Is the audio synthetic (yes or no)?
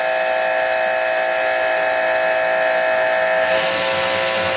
no